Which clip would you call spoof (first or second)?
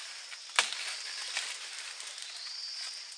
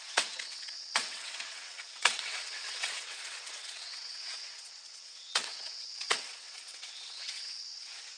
second